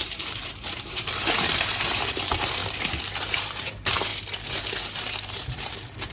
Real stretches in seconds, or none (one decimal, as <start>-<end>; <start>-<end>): 2.6-3.6; 4.1-4.8